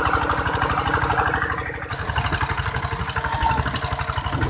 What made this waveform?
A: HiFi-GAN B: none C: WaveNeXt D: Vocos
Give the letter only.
B